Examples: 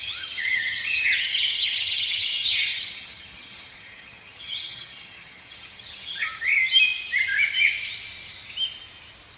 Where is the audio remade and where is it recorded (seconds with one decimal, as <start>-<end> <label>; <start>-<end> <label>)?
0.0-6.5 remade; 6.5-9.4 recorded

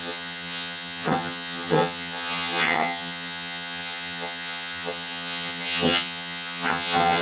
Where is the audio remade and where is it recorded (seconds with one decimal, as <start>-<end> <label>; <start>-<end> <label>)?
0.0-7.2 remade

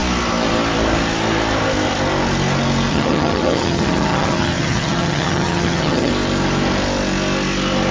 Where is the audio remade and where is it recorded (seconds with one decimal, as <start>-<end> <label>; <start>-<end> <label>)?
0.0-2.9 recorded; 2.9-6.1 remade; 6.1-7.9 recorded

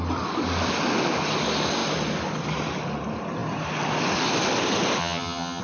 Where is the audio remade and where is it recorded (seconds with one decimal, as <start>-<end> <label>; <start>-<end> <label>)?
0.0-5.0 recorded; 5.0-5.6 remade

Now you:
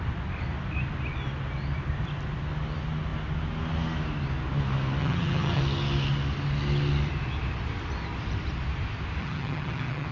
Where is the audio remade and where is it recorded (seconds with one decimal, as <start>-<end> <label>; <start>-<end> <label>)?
0.0-5.0 recorded; 5.0-5.6 remade; 5.6-9.2 recorded; 9.2-10.1 remade

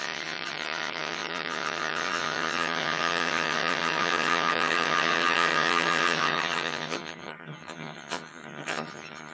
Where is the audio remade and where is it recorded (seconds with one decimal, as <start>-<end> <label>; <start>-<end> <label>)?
0.0-9.3 remade

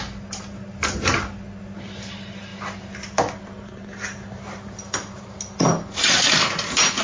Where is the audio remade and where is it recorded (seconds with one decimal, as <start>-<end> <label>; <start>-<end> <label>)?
0.0-7.0 recorded

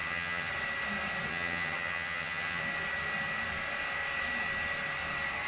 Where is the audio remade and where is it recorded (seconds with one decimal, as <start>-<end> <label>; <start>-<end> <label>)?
0.0-0.5 remade; 0.5-1.3 recorded; 1.3-2.6 remade; 2.6-5.5 recorded